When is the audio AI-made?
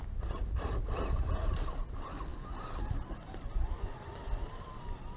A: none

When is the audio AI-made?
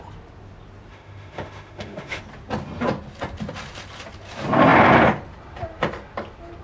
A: 0.9-2.2 (autoencoder, DAC-VAE)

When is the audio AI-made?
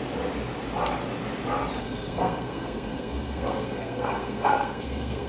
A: 1.8-5.3 (codec, SNAC)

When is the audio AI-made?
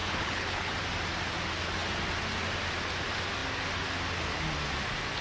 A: 0.0-0.7 (codec, HILCodec)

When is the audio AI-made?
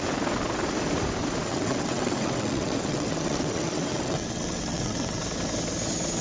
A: 1.5-5.2 (vocoder, WaveNeXt)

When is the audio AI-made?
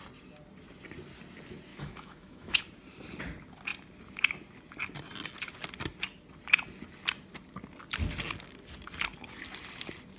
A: 1.7-2.6 (autoencoder, DAC-VAE)